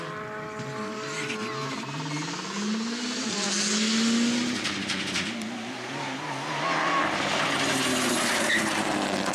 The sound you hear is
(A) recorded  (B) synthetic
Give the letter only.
A